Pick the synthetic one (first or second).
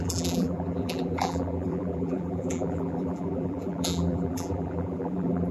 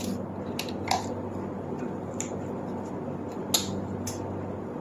first